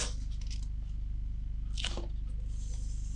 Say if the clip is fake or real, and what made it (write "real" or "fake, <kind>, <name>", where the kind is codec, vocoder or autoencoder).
real